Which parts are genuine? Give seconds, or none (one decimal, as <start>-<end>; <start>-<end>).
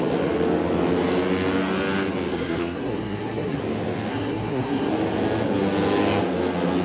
0.0-2.3; 3.6-4.1; 4.9-6.8